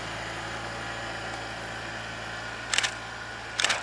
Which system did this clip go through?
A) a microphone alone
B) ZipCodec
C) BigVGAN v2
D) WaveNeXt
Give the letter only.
A